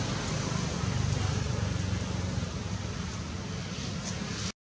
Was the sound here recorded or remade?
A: recorded